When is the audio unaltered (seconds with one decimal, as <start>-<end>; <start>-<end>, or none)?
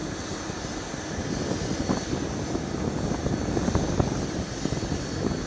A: 0.0-5.5